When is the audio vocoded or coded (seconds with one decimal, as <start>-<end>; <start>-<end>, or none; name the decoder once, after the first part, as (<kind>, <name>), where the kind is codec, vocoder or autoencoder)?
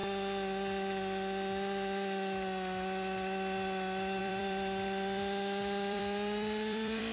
4.2-7.1 (vocoder, BigVGAN v2)